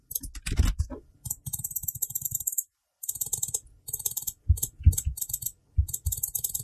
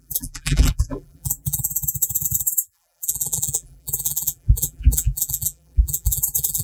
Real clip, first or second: first